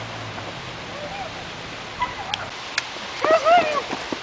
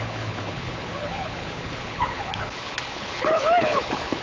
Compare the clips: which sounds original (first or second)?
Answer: first